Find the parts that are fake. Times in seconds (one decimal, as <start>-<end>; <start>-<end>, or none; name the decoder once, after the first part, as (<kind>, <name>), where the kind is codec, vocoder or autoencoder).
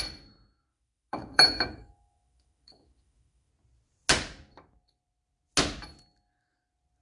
0.7-3.5 (autoencoder, DAC-VAE)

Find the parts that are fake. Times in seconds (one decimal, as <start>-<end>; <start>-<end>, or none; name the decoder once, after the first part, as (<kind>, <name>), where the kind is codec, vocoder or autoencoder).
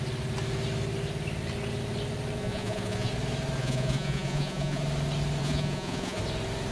2.4-3.1 (vocoder, Vocos); 3.6-4.8; 5.4-6.2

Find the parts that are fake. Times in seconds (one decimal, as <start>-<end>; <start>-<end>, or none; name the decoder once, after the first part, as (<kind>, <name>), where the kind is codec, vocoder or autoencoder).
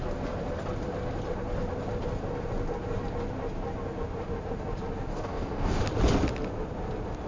5.1-5.8 (codec, DAC)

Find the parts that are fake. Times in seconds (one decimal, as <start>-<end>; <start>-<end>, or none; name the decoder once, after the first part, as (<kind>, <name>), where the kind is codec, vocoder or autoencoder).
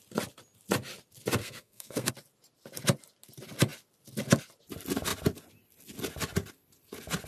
1.4-2.1 (codec, SNAC)